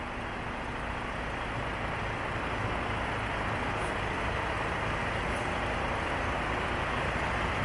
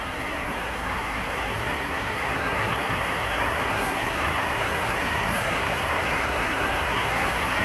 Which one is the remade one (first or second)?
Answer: second